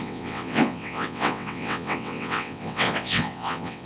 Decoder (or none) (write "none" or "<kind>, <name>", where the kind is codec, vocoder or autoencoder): vocoder, WaveNeXt